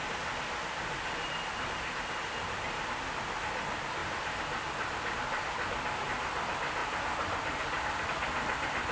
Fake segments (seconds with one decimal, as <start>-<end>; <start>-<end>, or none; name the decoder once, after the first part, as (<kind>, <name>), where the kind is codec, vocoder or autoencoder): 0.0-1.9 (vocoder, BigVGAN v2); 4.0-6.0; 6.8-8.0